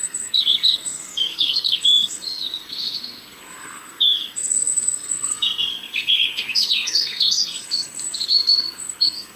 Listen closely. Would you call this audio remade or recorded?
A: remade